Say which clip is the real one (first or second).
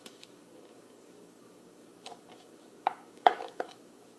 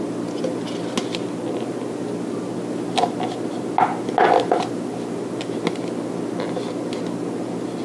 second